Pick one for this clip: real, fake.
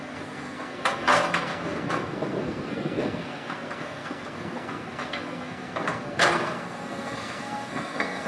fake